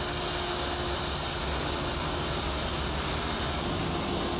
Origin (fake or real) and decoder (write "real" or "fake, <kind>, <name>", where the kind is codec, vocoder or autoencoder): real